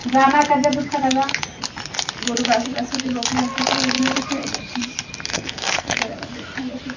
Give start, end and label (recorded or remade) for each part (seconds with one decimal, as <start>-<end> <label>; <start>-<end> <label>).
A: 0.0-5.3 recorded; 5.3-6.0 remade; 6.0-7.0 recorded